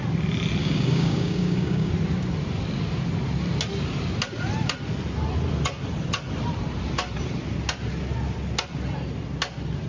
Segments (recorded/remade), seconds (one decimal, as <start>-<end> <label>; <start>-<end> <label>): 0.0-0.6 recorded; 0.6-1.9 remade; 1.9-9.9 recorded

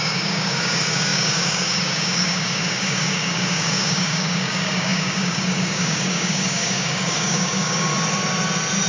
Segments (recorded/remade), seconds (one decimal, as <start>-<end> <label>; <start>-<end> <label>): 0.0-7.9 remade; 7.9-8.9 recorded